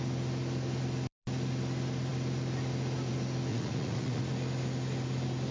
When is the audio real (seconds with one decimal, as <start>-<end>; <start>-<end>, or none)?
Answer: 0.0-3.5; 4.2-5.5